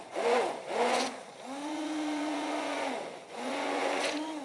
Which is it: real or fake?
fake